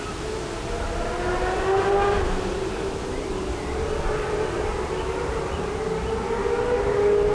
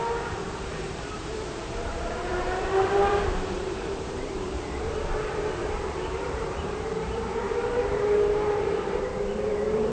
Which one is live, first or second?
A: first